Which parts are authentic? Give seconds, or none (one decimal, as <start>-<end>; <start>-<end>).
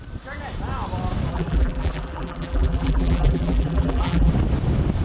0.0-1.3; 4.3-5.0